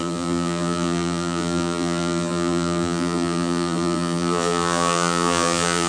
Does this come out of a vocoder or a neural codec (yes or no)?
yes